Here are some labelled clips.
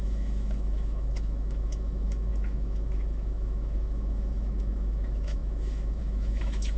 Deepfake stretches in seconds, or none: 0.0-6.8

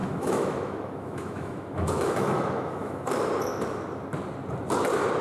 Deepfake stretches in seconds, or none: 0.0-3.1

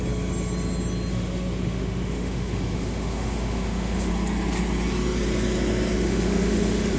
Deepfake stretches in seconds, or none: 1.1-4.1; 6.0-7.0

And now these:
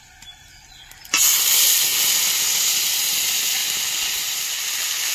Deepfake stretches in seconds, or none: none

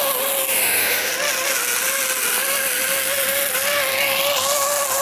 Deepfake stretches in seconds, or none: 0.5-1.1

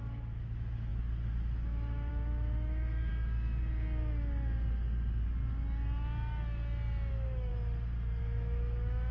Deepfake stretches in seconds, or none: 0.0-3.1; 7.1-7.5; 8.2-9.1

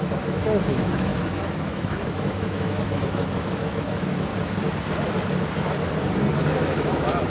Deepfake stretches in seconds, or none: 0.0-4.3; 6.4-7.3

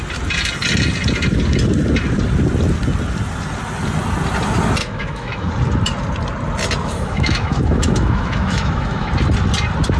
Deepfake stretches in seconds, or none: 4.8-5.5; 6.8-9.1